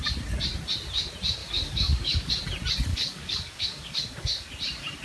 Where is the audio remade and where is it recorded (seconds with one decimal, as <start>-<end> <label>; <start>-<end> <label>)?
0.0-1.4 recorded; 1.4-2.3 remade; 2.3-2.9 recorded; 2.9-4.5 remade; 4.5-5.0 recorded